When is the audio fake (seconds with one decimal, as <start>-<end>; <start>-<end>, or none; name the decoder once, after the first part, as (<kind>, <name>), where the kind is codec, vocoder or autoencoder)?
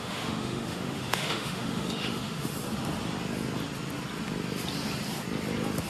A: 0.0-2.5 (autoencoder, DAC-VAE)